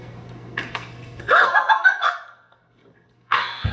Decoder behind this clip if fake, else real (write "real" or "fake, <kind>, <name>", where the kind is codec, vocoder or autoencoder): fake, codec, SNAC